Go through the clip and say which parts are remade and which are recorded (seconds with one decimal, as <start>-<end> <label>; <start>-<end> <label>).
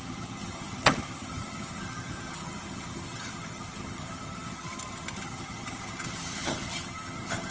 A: 0.0-7.5 remade